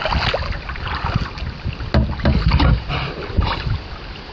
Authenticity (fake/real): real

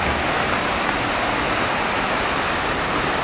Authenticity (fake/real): real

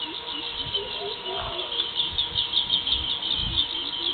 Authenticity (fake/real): real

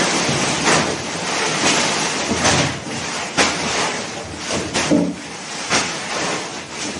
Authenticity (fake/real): real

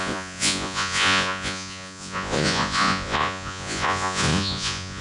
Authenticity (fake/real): fake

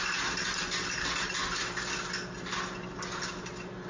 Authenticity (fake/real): real